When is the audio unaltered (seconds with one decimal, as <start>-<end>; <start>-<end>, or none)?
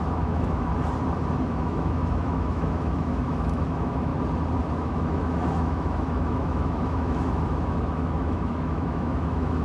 0.7-1.5; 4.1-4.7